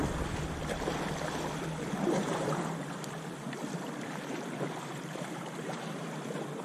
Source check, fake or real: fake